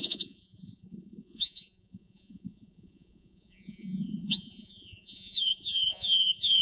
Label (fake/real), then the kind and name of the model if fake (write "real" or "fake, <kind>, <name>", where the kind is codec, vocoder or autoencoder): fake, vocoder, Vocos